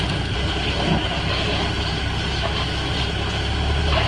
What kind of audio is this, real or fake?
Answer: real